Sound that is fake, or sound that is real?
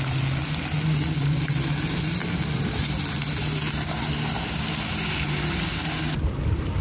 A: real